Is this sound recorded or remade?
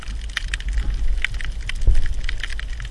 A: recorded